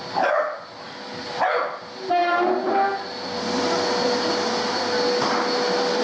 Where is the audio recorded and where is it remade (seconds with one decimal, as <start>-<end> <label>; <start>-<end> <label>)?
0.0-6.0 recorded